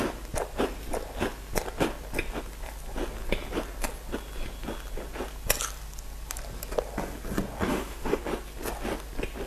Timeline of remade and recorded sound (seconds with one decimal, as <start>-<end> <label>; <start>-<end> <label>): 0.0-7.7 recorded; 7.7-8.2 remade; 8.2-9.5 recorded